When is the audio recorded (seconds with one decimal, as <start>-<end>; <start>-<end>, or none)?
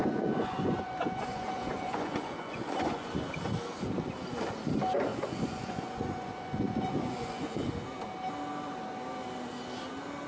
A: 3.1-5.1; 7.6-10.3